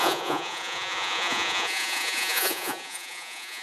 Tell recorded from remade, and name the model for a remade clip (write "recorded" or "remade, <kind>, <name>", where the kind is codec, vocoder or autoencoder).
remade, vocoder, Vocos